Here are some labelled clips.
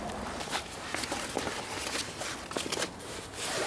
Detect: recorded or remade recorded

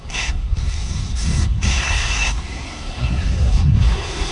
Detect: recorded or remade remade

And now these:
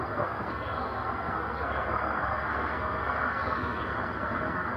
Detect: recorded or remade remade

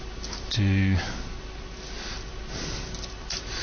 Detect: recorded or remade recorded